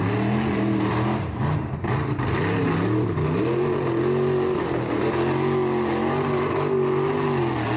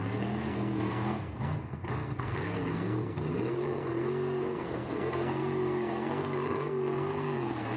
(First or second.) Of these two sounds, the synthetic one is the second